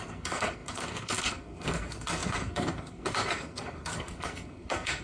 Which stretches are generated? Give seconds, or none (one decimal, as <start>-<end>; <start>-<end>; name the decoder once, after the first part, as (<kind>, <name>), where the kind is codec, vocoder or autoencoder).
0.0-5.0 (codec, SNAC)